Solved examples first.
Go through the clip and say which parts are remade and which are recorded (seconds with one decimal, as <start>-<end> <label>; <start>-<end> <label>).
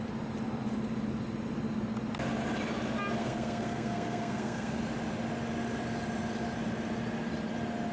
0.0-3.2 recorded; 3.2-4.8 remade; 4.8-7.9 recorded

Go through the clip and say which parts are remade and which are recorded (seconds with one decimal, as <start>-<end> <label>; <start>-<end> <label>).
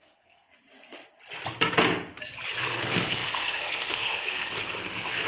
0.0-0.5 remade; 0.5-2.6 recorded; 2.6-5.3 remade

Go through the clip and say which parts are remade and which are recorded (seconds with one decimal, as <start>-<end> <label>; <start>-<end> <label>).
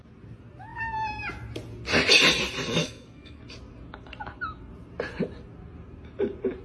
0.0-2.8 recorded; 2.8-3.4 remade; 3.4-6.6 recorded